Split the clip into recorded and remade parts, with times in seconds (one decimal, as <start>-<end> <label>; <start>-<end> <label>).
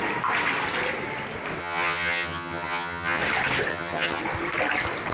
0.0-1.6 recorded; 1.6-3.2 remade; 3.2-3.7 recorded; 3.7-4.2 remade; 4.2-5.1 recorded